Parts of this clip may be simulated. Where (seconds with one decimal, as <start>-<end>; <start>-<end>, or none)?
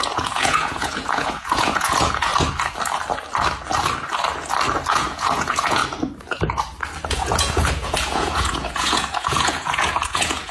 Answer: 0.0-2.3; 4.9-5.8; 7.1-10.5